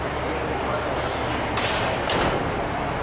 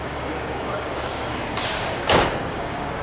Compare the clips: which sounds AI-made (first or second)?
second